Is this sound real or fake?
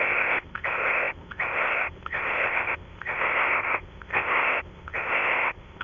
fake